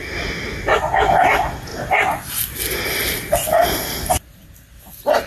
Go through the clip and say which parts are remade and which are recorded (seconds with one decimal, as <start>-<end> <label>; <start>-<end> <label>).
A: 0.0-5.3 recorded